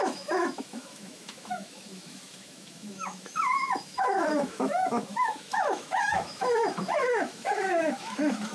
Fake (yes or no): yes